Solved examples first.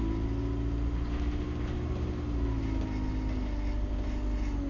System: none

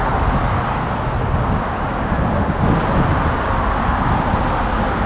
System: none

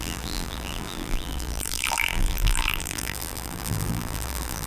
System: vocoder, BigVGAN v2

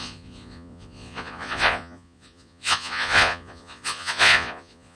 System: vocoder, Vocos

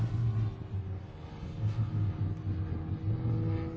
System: none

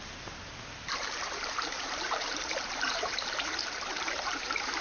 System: vocoder, BigVGAN v2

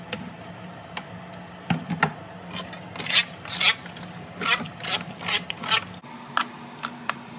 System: none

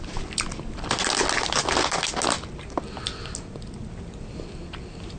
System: none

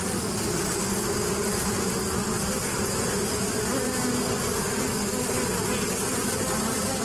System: none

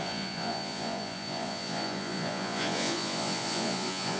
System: vocoder, Vocos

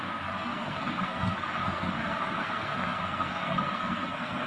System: codec, SNAC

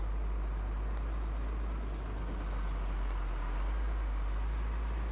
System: none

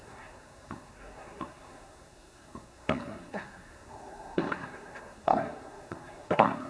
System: codec, SNAC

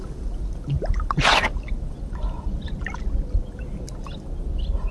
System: none